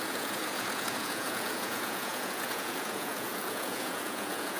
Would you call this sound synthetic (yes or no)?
yes